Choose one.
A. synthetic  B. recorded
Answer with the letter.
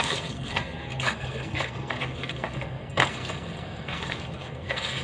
A